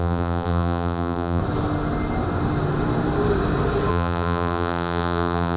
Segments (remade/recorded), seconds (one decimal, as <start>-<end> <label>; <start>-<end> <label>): 0.0-1.4 remade; 1.4-3.9 recorded; 3.9-5.6 remade